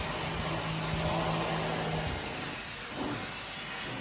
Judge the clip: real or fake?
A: real